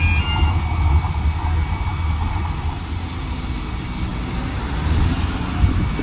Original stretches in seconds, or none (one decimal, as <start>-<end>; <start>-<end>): 0.0-6.0